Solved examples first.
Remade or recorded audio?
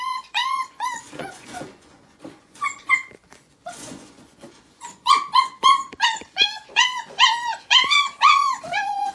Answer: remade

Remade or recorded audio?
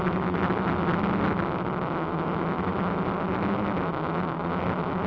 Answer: recorded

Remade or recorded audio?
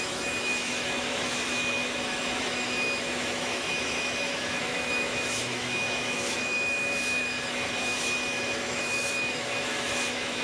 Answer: remade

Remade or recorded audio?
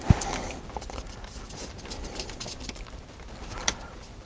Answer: recorded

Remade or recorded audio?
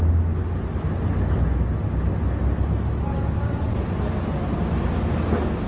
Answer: recorded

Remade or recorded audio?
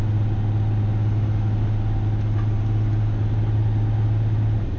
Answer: recorded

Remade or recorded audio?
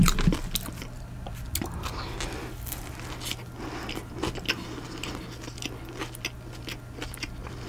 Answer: recorded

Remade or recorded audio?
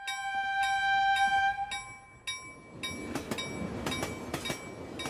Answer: recorded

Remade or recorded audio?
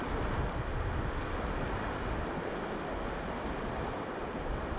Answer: recorded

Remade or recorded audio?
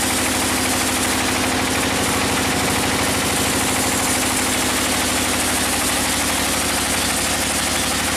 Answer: recorded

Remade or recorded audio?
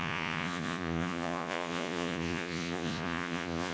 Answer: remade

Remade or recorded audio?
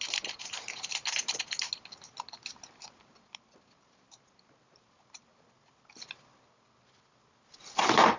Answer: recorded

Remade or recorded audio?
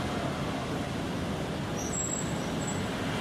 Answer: recorded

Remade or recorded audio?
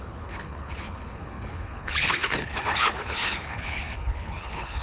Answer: remade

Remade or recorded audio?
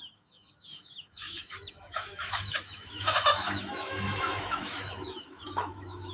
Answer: remade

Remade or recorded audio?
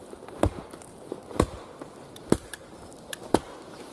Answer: recorded